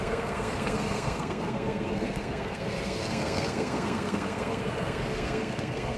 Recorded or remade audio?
remade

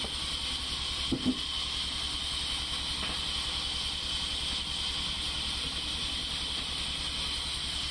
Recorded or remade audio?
recorded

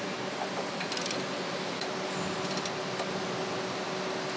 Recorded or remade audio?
recorded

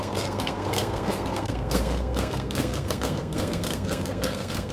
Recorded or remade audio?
remade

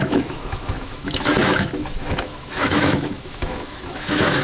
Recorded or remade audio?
remade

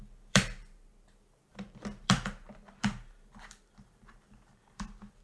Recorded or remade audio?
remade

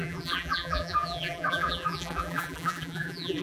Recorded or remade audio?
remade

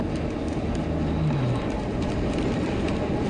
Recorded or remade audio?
recorded